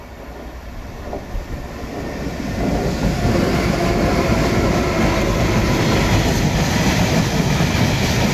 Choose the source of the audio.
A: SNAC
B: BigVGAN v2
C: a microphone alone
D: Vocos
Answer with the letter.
C